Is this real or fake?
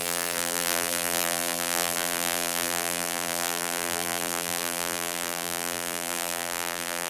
fake